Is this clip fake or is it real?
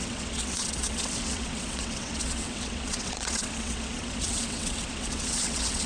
fake